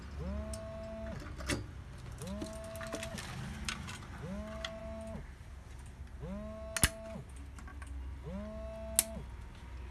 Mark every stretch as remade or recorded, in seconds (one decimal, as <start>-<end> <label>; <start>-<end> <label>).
0.0-9.9 recorded

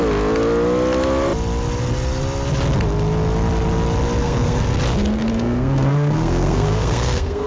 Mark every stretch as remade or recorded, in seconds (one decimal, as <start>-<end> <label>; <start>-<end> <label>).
0.0-4.2 recorded; 4.2-4.8 remade; 4.8-5.3 recorded; 5.3-7.5 remade

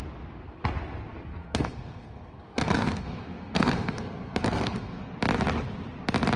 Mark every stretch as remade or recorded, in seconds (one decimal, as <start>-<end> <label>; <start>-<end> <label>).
0.0-1.3 recorded; 1.3-5.1 remade; 5.1-6.4 recorded

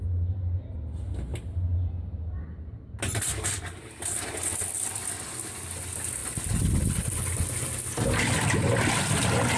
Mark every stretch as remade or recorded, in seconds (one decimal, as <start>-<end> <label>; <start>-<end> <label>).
0.0-9.6 recorded

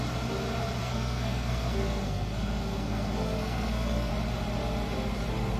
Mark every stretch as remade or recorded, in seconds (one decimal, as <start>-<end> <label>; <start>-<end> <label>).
0.0-0.8 recorded; 0.8-4.1 remade; 4.1-5.6 recorded

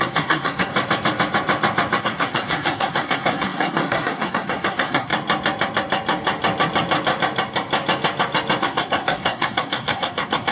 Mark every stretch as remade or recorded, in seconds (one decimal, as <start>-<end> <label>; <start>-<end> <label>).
0.0-0.7 remade; 0.7-2.0 recorded; 2.0-5.1 remade; 5.1-8.6 recorded; 8.6-10.5 remade

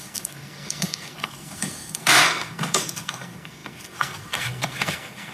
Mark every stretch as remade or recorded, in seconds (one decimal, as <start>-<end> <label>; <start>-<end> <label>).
0.0-5.3 remade